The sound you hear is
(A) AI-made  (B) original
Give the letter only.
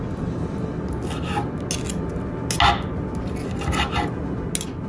B